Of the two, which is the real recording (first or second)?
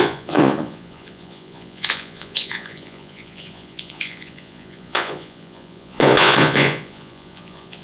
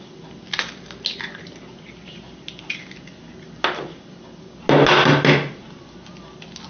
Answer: second